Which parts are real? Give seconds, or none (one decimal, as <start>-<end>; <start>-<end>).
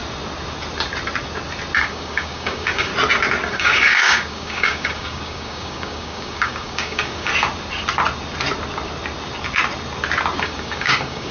0.0-1.8; 2.9-3.5; 7.3-10.4